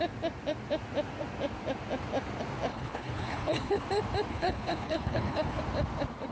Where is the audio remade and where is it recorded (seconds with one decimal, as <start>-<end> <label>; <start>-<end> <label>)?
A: 0.0-2.7 recorded; 2.7-3.8 remade; 3.8-4.3 recorded; 4.3-5.6 remade; 5.6-6.3 recorded